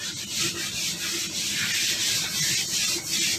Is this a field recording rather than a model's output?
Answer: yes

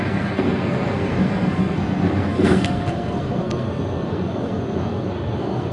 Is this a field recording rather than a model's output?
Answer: no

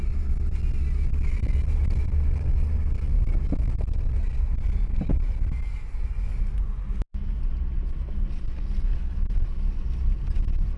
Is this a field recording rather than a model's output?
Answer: yes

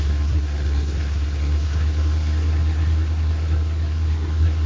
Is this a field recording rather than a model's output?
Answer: no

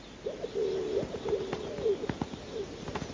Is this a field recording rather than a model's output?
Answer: yes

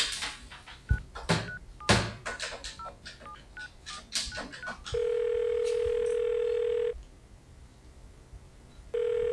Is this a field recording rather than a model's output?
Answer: yes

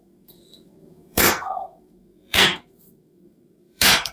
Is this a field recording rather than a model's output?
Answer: no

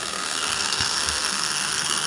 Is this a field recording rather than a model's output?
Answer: no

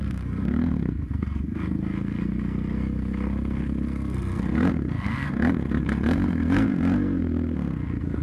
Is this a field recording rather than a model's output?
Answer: no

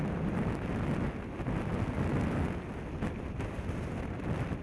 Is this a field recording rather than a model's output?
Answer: yes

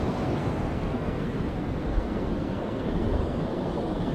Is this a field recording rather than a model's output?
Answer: no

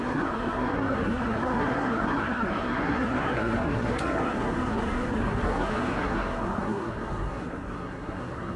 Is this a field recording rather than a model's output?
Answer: no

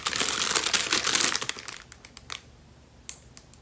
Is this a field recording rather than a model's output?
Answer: yes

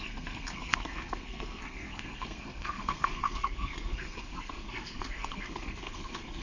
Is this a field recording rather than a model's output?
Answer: no